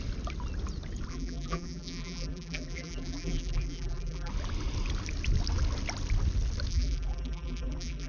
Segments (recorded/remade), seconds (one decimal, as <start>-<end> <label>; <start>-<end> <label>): 0.0-1.1 recorded; 1.1-4.3 remade; 4.3-6.7 recorded; 6.7-8.1 remade